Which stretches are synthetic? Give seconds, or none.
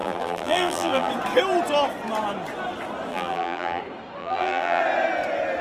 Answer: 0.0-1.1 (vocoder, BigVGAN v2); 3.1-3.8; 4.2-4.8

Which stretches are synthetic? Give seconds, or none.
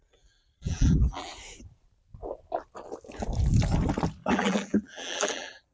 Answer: 0.0-1.3 (vocoder, BigVGAN v2); 4.3-5.7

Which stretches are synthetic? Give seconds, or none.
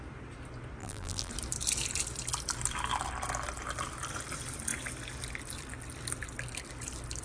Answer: 0.8-1.3 (vocoder, BigVGAN v2)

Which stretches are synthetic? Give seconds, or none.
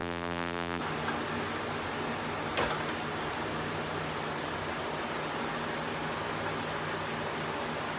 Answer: 0.0-0.8 (vocoder, BigVGAN v2)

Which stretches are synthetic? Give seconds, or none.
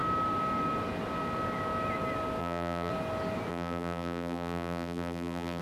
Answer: 2.4-2.9 (vocoder, BigVGAN v2); 3.5-5.6